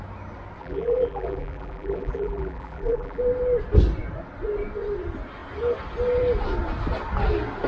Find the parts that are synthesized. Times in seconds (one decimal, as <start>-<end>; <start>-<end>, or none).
0.6-3.2

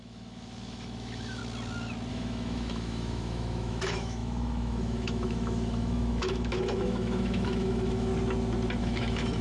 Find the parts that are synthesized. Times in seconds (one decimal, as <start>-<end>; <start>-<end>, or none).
0.0-1.4; 2.1-8.1; 8.8-9.4

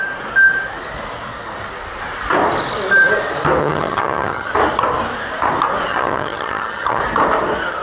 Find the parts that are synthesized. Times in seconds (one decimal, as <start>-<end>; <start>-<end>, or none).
3.6-4.5; 5.9-7.0

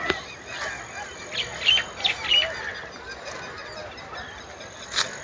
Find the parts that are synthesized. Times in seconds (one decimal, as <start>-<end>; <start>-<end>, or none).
0.0-1.5; 2.1-2.7; 3.3-3.8; 4.5-5.2

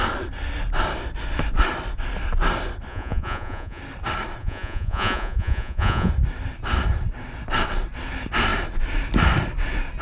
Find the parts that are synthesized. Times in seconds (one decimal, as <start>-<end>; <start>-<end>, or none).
2.9-3.8; 4.4-6.1

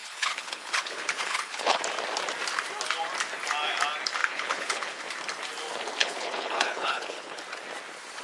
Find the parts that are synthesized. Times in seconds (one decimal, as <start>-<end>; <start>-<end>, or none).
0.0-1.8; 4.2-5.0; 6.0-7.4